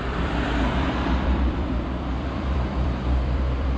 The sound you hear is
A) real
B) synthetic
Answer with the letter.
B